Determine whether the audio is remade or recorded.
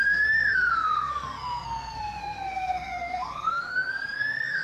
remade